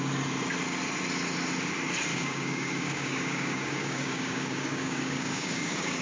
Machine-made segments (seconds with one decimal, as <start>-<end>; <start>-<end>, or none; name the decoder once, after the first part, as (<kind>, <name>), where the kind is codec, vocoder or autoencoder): 2.1-6.0 (codec, DAC)